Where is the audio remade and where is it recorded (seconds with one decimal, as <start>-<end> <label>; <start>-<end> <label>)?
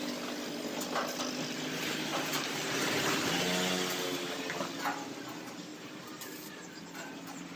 0.0-7.6 recorded